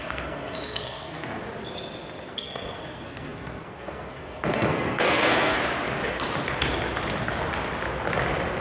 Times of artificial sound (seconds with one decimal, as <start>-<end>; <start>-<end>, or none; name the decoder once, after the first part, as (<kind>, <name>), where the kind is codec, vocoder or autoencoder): 0.0-1.4 (codec, SNAC); 2.3-5.6